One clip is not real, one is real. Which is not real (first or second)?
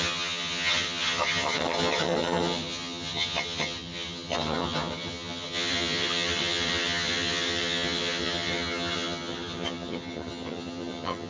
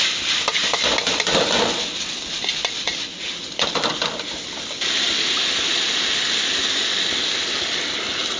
first